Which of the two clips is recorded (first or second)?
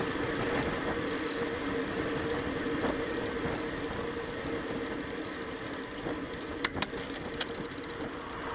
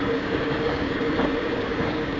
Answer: first